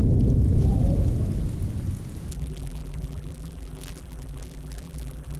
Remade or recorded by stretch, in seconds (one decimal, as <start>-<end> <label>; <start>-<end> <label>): 0.0-2.3 recorded; 2.3-5.4 remade

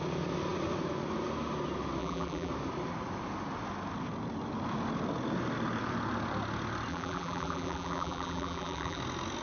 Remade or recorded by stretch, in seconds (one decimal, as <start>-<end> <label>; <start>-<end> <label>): 0.0-2.0 recorded; 2.0-2.5 remade; 2.5-6.9 recorded; 6.9-9.0 remade; 9.0-9.4 recorded